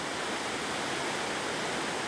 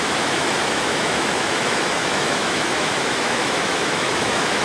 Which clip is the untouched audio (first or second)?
first